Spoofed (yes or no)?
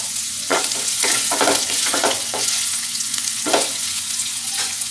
yes